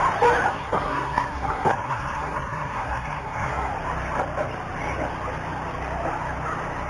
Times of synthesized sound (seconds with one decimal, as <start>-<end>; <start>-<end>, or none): 0.5-3.7